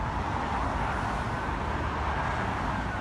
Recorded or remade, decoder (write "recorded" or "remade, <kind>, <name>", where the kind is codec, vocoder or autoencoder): recorded